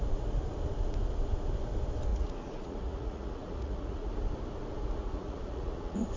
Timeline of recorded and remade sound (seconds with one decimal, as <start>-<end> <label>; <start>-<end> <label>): 0.0-2.1 recorded; 2.1-4.1 remade; 4.1-5.0 recorded; 5.0-6.2 remade